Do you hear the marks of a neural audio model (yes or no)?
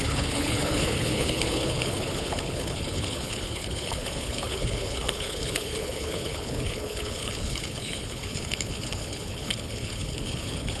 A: yes